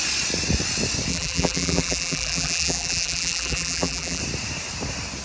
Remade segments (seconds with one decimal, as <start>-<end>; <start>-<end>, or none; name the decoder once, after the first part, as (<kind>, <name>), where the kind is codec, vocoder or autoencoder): 1.1-4.2 (vocoder, BigVGAN v2)